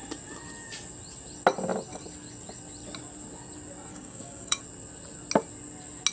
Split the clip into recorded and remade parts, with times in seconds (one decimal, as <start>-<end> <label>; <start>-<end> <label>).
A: 0.0-3.9 recorded; 3.9-4.6 remade; 4.6-6.1 recorded